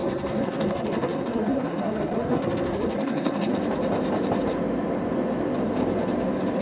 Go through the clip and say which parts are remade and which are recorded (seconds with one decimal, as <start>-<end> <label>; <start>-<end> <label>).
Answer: 0.0-3.5 remade; 3.5-6.6 recorded

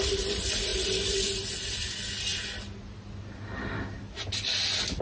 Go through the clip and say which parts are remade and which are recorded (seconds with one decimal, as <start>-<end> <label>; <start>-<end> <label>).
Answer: 0.0-5.0 recorded

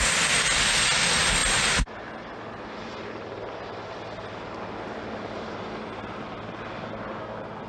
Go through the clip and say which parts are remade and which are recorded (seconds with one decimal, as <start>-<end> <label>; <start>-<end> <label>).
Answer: 0.0-7.7 recorded

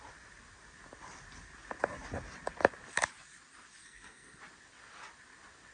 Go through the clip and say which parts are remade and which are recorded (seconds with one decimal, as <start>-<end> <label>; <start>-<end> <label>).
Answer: 0.0-3.8 recorded; 3.8-4.4 remade; 4.4-5.7 recorded

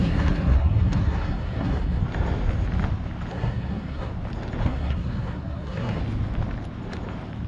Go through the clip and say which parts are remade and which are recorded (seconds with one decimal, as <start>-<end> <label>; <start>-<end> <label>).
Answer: 0.0-2.0 remade; 2.0-3.3 recorded; 3.3-4.1 remade; 4.1-4.6 recorded; 4.6-6.0 remade; 6.0-7.5 recorded

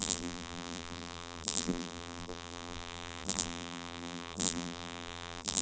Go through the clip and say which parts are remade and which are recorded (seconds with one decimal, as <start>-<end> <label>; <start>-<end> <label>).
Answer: 0.0-5.6 remade

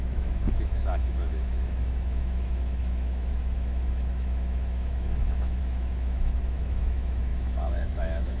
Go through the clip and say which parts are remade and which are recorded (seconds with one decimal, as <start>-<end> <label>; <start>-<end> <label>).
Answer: 0.0-8.4 remade

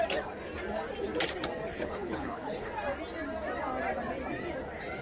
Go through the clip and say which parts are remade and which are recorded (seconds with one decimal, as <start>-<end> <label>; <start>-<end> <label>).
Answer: 0.0-1.7 recorded; 1.7-2.7 remade; 2.7-5.0 recorded